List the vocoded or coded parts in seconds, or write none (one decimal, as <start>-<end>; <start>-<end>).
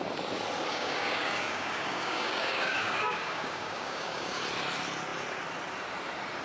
0.7-4.4